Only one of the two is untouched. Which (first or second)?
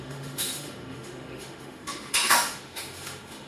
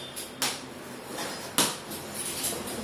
second